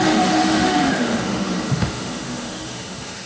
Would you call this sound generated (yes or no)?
yes